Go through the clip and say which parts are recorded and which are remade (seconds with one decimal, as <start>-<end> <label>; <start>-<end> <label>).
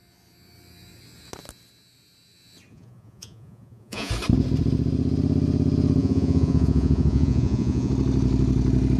0.0-2.7 recorded; 2.7-4.1 remade; 4.1-6.0 recorded; 6.0-7.9 remade; 7.9-9.0 recorded